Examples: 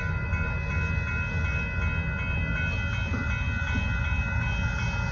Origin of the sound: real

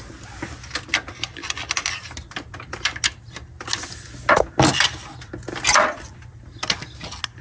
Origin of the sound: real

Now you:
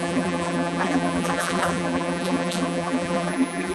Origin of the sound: fake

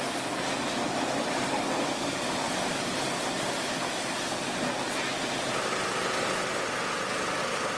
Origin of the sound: real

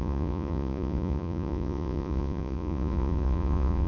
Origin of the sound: fake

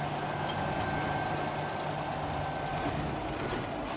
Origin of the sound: real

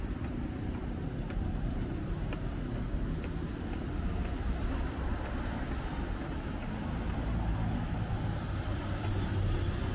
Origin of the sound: real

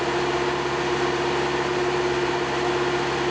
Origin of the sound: real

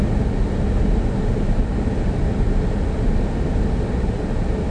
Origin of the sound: real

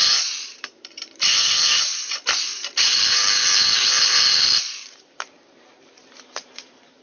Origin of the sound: fake